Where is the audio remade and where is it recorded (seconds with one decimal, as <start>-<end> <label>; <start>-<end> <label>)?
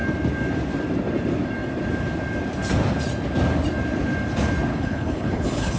0.0-4.7 recorded; 4.7-5.8 remade